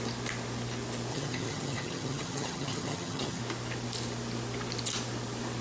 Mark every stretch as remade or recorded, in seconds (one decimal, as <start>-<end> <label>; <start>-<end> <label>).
0.0-1.1 recorded; 1.1-3.4 remade; 3.4-5.6 recorded